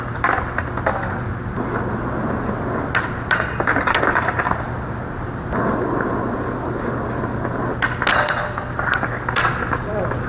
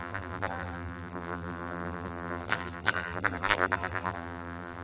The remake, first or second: second